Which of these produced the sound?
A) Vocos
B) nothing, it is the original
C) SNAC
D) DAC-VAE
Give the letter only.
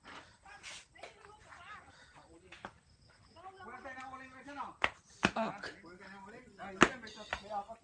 B